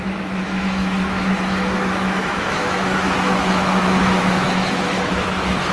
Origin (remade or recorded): remade